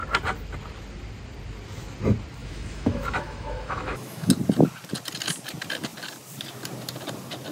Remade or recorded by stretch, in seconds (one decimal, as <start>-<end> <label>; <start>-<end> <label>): 0.0-2.4 recorded; 2.4-4.3 remade; 4.3-7.5 recorded